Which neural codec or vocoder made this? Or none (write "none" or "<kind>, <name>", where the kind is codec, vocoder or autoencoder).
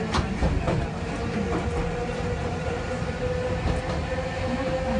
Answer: none